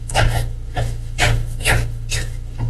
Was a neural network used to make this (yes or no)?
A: yes